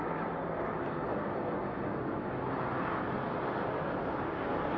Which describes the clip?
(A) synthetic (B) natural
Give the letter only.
B